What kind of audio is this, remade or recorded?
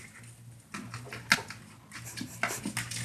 recorded